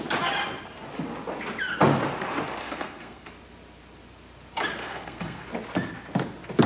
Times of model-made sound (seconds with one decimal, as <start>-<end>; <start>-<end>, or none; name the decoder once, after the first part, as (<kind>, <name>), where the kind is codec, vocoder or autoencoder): 2.6-3.3 (codec, SNAC); 4.8-5.5